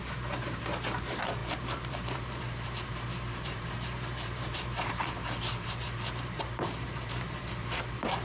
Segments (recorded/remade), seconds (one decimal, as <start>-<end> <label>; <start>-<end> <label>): 0.0-8.2 remade

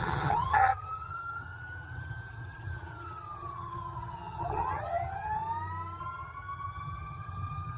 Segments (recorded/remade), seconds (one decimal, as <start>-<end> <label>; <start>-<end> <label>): 0.0-5.4 remade; 5.4-6.0 recorded; 6.0-7.8 remade

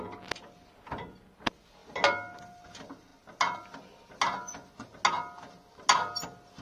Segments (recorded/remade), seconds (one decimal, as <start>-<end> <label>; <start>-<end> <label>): 0.0-6.6 recorded

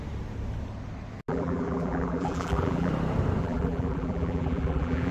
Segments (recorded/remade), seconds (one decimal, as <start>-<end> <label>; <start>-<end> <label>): 0.0-1.3 recorded; 1.3-2.9 remade; 2.9-3.4 recorded; 3.4-5.1 remade

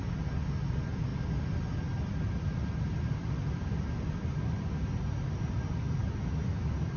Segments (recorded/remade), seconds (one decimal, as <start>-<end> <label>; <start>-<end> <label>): 0.0-7.0 recorded